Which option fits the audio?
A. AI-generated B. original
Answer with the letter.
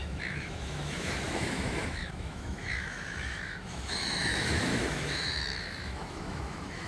A